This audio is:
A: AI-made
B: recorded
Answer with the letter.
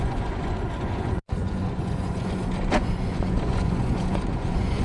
A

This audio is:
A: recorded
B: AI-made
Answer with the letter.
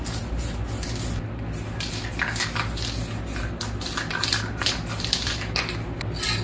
A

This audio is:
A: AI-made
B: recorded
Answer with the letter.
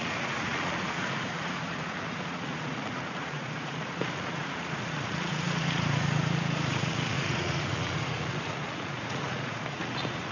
A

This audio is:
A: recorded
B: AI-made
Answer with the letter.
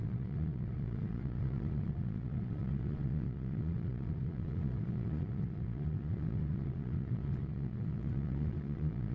B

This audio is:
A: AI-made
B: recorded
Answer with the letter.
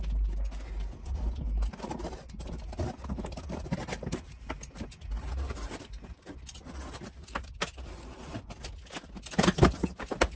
B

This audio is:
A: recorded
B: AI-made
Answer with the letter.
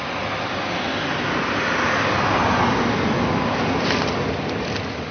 A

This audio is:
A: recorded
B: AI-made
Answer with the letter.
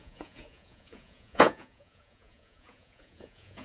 B